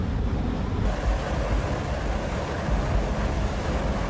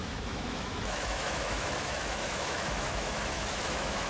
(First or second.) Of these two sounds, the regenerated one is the second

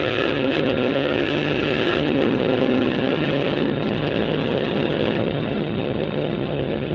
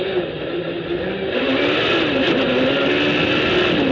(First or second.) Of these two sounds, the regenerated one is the first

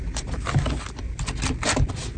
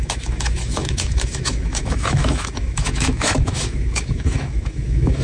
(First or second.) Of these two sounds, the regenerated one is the second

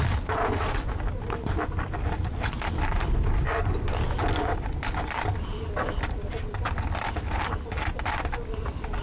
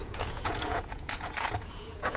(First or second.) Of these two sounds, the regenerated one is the second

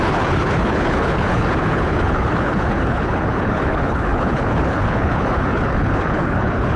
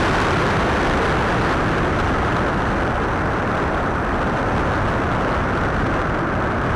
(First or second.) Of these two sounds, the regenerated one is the first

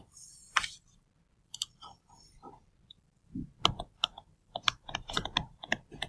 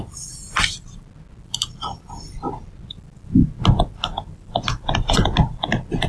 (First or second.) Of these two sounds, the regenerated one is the first